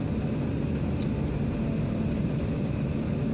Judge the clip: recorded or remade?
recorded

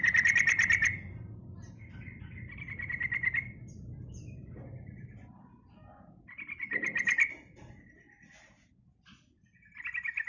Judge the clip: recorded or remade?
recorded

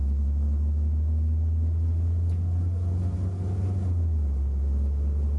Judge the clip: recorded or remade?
recorded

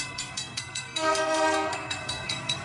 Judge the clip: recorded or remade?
remade